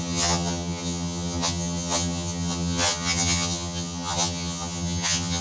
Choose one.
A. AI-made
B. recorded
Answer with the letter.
A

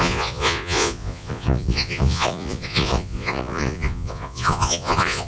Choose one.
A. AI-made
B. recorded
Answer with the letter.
A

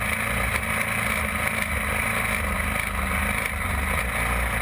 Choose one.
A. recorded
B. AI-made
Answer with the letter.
A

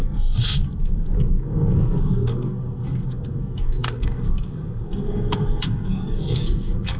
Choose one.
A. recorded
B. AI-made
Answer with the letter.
B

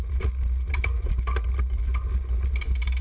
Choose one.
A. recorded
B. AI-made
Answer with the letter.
A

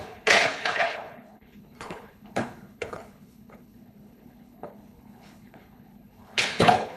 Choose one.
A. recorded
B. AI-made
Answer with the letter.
B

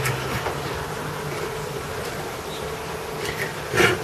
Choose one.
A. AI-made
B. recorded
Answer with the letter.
B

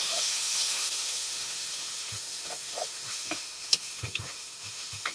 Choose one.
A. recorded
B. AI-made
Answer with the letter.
B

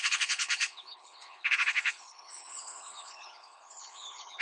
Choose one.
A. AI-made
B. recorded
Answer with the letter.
A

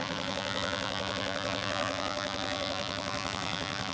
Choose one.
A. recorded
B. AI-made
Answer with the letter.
B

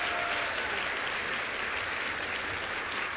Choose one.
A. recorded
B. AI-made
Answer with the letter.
A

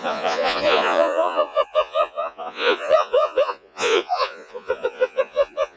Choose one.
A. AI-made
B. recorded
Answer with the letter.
A